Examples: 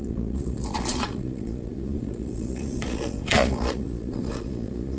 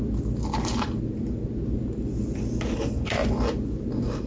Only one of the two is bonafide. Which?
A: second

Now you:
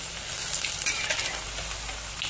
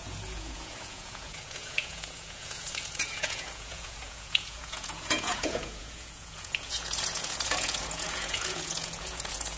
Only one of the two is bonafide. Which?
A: first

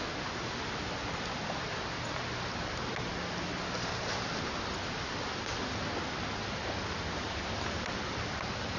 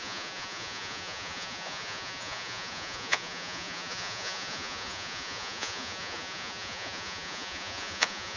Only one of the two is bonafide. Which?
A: first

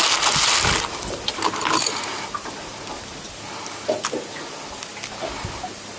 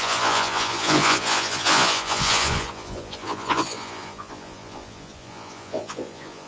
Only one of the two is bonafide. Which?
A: first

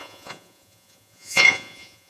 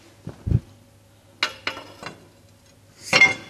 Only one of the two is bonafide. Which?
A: second